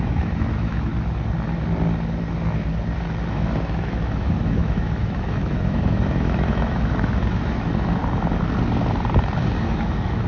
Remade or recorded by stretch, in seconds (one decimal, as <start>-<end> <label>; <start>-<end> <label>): 0.0-0.9 remade; 0.9-3.3 recorded; 3.3-8.0 remade; 8.0-9.6 recorded; 9.6-10.3 remade